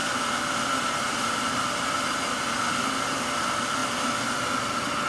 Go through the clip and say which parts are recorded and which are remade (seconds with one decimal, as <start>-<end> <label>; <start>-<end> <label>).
0.0-5.1 recorded